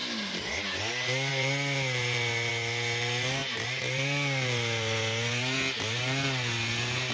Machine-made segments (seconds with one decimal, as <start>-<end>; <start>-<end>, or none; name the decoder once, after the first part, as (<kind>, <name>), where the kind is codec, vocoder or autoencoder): none